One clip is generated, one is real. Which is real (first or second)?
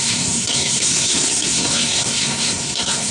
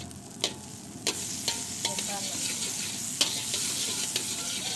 second